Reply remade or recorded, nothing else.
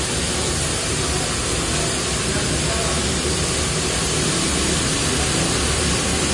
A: recorded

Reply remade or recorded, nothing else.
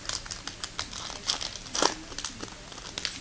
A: recorded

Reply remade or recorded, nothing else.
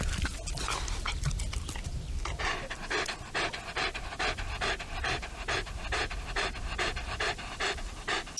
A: recorded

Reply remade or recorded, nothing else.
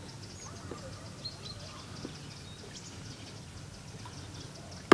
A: recorded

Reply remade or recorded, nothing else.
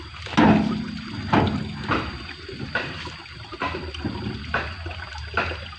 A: recorded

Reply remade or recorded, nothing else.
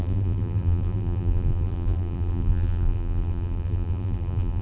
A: remade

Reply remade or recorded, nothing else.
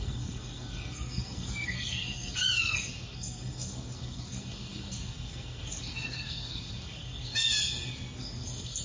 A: remade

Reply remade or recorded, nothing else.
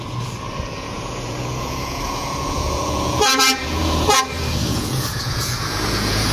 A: remade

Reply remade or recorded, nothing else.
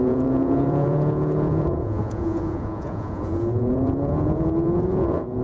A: remade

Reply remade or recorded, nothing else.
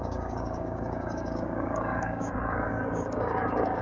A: remade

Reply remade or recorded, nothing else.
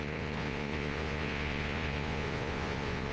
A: remade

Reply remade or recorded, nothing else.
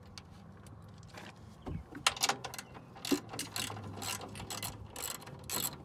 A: recorded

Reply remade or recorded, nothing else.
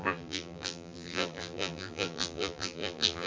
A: remade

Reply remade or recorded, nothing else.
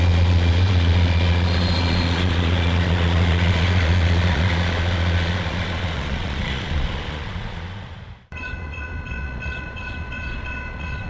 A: remade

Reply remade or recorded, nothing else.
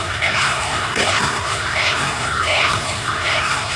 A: remade